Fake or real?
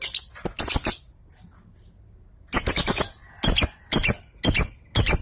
real